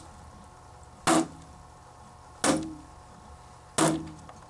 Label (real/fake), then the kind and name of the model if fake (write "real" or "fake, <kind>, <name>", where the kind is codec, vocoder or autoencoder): real